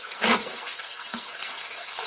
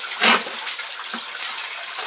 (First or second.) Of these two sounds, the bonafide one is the second